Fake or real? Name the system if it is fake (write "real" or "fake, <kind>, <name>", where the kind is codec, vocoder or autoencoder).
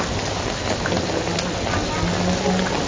real